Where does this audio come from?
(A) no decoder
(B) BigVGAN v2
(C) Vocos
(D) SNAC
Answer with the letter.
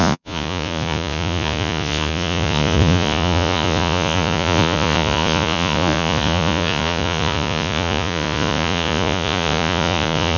C